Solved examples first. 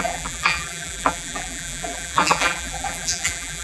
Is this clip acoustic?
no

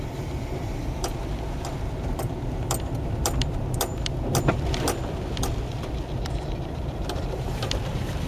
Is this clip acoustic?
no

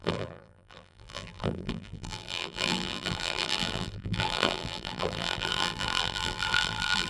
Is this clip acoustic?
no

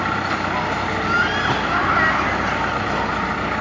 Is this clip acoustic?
yes